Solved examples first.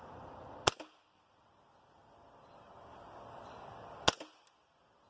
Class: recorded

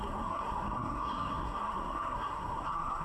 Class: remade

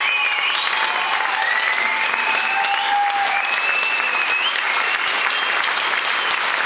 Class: recorded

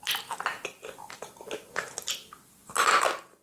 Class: recorded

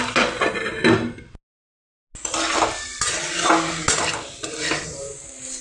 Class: recorded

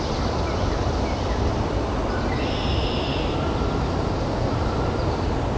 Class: recorded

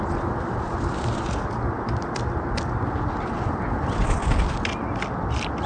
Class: recorded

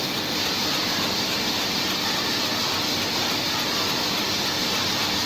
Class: recorded